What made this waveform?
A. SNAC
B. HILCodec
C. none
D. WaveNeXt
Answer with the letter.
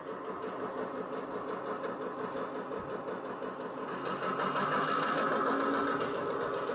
C